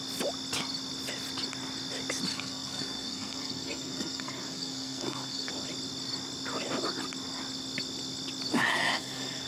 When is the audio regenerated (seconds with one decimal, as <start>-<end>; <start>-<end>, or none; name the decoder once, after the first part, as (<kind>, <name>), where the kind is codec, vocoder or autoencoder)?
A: 2.3-5.5 (codec, SNAC); 8.7-9.5